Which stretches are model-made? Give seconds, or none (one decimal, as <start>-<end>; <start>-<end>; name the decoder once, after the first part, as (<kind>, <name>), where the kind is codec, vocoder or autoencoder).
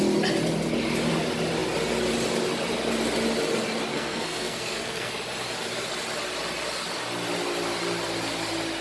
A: 3.9-5.1 (codec, SNAC)